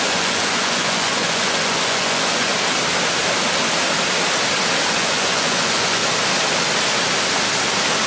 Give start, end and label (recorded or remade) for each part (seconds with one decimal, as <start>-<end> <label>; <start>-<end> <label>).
0.0-2.5 remade; 2.5-4.9 recorded; 4.9-6.0 remade; 6.0-8.1 recorded